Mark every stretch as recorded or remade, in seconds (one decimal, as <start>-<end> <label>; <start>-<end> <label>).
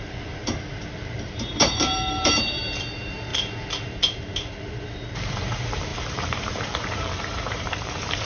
0.0-8.3 remade